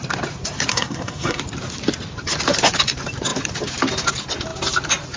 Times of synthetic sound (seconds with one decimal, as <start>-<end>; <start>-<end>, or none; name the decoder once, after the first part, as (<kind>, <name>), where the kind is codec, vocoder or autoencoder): 0.7-1.4 (codec, SNAC)